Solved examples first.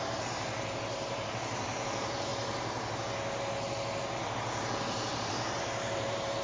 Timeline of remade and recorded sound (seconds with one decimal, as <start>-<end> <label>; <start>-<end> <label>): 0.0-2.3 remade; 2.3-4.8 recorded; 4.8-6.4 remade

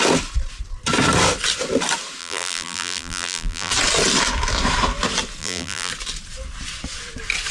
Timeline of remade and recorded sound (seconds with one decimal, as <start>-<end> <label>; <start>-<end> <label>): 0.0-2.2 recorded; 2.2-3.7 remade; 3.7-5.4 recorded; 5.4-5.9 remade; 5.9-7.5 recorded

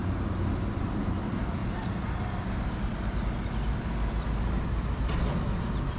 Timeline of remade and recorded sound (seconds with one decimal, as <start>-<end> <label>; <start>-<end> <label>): 0.0-6.0 recorded

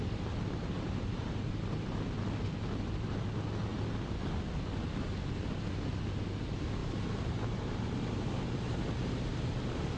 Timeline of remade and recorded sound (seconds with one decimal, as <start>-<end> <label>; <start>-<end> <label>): 0.0-0.6 recorded; 0.6-1.5 remade; 1.5-6.8 recorded; 6.8-8.8 remade; 8.8-10.0 recorded